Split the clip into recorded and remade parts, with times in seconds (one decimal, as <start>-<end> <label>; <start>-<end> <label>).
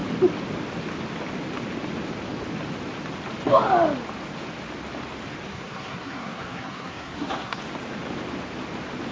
0.0-5.5 recorded; 5.5-7.6 remade; 7.6-9.1 recorded